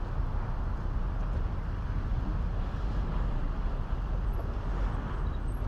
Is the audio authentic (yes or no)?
yes